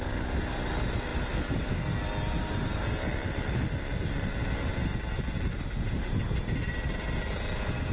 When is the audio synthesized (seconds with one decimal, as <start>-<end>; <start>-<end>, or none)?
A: 5.5-6.1